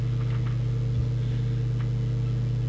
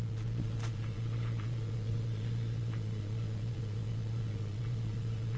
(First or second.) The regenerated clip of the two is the second